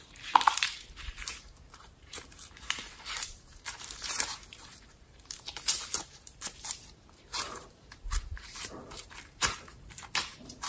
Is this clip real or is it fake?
fake